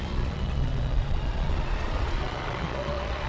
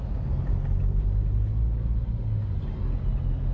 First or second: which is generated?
first